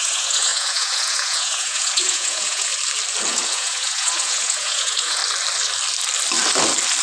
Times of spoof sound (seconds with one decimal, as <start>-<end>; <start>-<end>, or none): 0.0-2.7; 3.3-5.2